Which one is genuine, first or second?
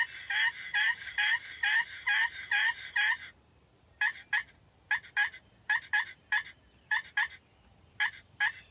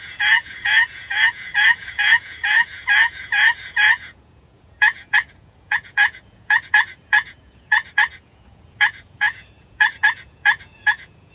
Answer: first